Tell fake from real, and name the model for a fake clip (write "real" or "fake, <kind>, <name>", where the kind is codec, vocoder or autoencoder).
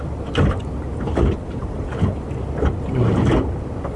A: real